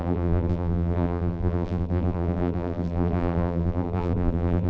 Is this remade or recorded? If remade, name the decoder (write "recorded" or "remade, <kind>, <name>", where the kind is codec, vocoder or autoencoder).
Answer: remade, vocoder, BigVGAN v2